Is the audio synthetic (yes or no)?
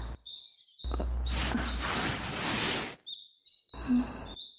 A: no